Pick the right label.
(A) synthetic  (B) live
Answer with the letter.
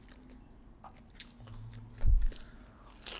B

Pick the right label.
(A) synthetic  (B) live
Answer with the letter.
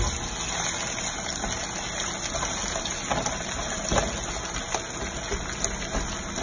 B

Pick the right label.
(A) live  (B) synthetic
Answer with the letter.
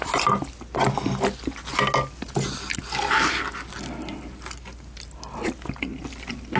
A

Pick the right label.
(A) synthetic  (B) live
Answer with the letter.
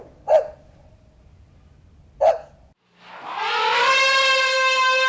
B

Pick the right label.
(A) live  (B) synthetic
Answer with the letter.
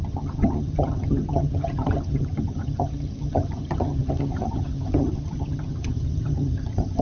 B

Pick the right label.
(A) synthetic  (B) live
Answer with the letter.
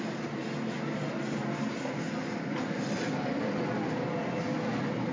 B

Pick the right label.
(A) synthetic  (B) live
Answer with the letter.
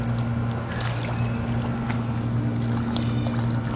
B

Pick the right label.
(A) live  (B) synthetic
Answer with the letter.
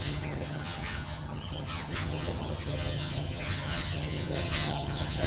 B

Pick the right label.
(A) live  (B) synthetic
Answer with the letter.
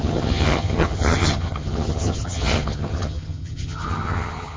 B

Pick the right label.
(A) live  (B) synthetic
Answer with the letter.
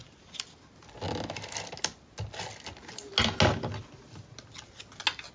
A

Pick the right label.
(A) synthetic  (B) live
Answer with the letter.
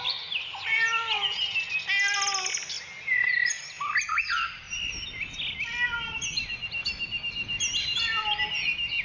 B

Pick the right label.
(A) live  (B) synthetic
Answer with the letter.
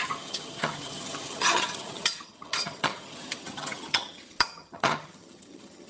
B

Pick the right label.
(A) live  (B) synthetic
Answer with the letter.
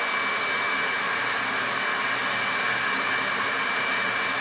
A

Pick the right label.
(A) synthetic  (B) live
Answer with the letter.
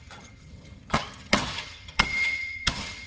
A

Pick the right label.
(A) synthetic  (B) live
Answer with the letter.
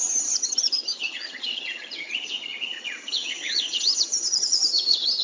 A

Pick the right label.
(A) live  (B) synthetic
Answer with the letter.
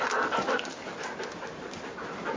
A